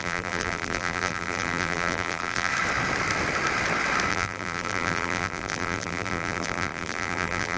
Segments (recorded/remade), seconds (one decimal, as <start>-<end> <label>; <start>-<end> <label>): 0.0-2.5 remade; 2.5-4.1 recorded; 4.1-7.6 remade